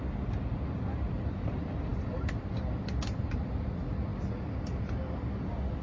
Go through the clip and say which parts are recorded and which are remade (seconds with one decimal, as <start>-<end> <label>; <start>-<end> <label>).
0.0-1.9 recorded; 1.9-3.2 remade; 3.2-5.8 recorded